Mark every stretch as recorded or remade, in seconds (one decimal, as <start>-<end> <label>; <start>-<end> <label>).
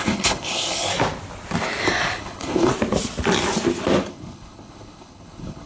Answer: 0.0-0.9 remade; 0.9-2.2 recorded; 2.2-2.7 remade; 2.7-4.1 recorded; 4.1-5.7 remade